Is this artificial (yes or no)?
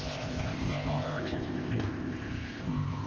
yes